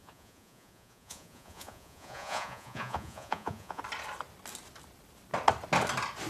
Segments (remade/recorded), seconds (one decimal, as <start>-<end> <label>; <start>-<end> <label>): 0.0-3.8 remade; 3.8-6.3 recorded